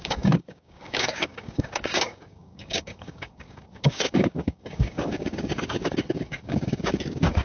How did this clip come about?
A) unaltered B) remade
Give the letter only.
B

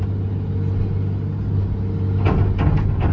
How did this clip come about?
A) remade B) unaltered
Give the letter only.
B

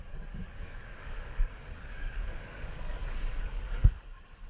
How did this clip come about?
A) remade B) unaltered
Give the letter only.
A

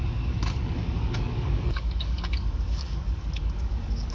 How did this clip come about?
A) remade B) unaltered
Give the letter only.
A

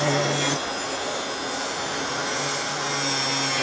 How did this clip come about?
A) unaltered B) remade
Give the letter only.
A